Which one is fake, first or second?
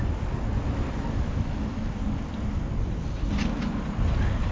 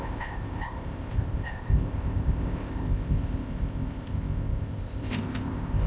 second